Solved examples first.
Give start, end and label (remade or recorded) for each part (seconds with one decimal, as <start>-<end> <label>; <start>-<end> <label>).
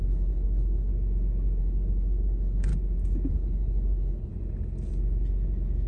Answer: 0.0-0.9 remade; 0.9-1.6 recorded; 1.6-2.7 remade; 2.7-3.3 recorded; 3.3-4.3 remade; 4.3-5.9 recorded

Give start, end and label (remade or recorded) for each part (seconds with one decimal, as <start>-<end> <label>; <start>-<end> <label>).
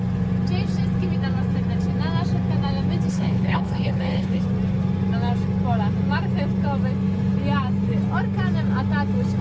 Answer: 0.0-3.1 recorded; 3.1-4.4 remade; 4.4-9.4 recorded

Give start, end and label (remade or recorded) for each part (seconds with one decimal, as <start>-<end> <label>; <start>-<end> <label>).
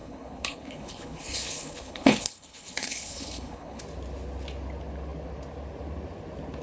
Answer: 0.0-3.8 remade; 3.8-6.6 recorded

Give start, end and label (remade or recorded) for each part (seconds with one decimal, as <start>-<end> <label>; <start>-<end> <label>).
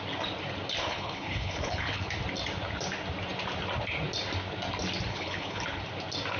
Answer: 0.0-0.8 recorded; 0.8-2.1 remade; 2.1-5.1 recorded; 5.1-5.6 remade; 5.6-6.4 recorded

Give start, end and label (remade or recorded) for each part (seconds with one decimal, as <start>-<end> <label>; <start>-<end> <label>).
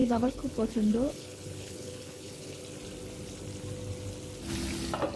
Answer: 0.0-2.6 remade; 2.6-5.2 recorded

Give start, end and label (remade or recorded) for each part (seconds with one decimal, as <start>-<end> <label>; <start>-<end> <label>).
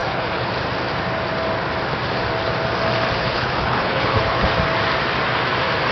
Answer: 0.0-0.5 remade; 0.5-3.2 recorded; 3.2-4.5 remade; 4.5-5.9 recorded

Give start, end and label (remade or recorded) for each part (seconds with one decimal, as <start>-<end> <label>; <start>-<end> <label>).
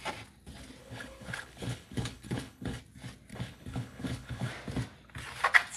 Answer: 0.0-0.8 recorded; 0.8-2.8 remade; 2.8-3.3 recorded; 3.3-4.5 remade; 4.5-5.8 recorded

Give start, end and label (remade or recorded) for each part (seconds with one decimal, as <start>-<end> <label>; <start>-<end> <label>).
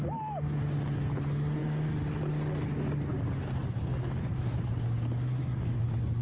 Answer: 0.0-6.2 recorded